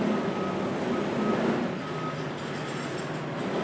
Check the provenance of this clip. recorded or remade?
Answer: recorded